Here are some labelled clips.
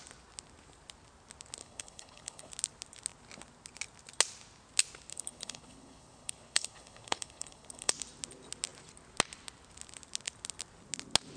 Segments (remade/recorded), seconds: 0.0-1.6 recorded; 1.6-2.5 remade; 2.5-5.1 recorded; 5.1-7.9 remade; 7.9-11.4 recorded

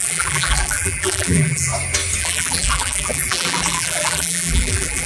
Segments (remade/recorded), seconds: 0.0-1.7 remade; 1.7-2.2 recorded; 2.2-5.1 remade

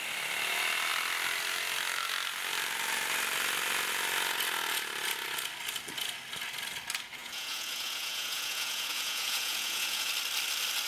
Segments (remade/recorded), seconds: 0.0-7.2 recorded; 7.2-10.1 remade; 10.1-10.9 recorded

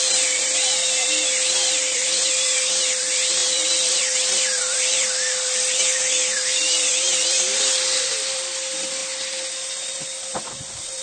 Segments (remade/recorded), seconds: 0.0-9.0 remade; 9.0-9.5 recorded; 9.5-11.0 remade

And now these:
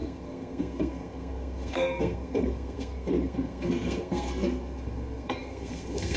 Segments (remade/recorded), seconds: 0.0-6.2 remade

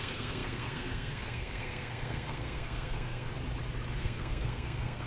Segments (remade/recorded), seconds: 0.0-3.3 remade; 3.3-4.0 recorded; 4.0-5.1 remade

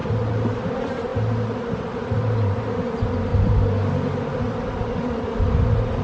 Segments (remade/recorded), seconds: 0.0-6.0 recorded

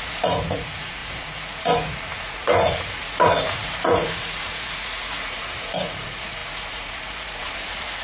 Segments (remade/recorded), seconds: 0.0-8.0 remade